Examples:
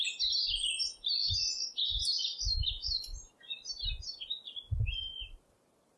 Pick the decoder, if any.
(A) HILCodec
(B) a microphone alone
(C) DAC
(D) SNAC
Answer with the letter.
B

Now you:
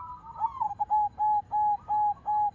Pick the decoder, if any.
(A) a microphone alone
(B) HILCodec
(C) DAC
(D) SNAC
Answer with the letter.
A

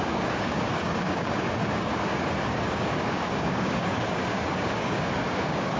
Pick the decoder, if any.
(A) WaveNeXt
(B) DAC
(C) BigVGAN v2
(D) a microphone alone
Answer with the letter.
B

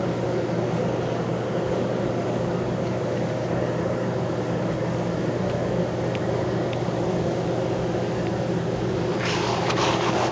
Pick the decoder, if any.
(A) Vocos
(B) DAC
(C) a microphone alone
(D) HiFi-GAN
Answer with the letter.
B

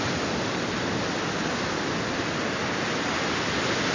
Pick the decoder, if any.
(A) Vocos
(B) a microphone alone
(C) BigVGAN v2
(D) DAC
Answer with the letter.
B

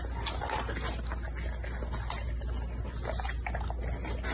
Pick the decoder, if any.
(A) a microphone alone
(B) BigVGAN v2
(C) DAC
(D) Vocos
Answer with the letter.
A